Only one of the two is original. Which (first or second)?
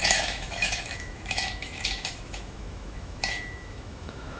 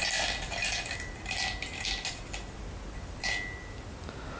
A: second